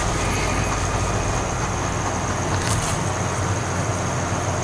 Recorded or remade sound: recorded